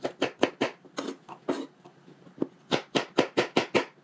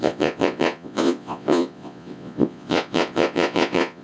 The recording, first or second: first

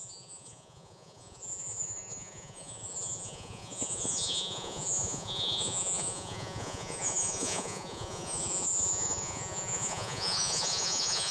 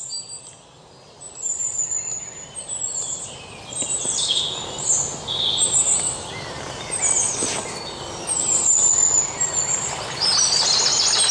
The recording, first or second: second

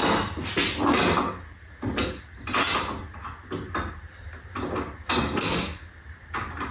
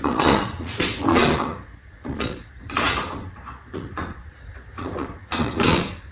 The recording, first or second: first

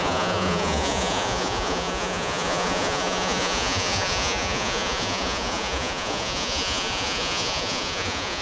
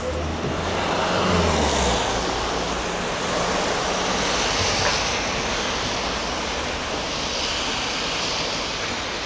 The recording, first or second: second